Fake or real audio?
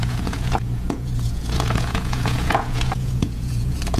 fake